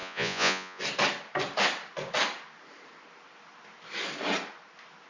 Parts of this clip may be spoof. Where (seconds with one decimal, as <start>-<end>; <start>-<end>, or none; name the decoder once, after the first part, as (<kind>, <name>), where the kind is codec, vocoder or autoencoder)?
0.0-0.8 (vocoder, Vocos)